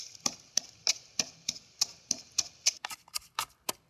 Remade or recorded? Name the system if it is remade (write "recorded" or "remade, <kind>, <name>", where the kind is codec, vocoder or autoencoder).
recorded